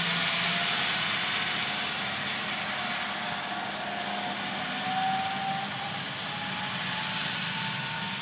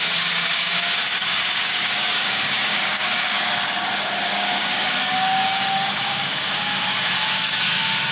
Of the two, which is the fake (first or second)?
second